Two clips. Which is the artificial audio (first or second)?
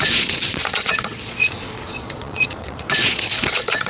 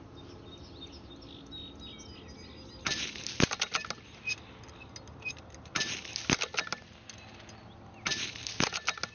first